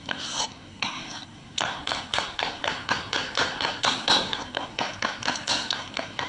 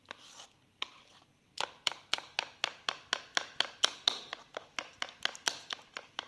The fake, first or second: first